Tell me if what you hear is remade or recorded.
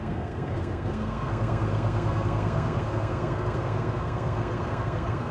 remade